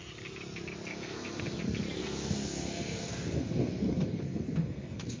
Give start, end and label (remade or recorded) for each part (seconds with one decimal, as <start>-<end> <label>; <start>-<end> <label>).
0.0-0.9 recorded; 0.9-1.6 remade; 1.6-2.0 recorded; 2.0-5.2 remade

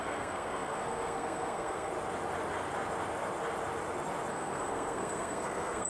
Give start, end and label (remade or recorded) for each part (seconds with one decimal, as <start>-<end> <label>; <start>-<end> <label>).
0.0-1.9 remade; 1.9-4.3 recorded; 4.3-5.9 remade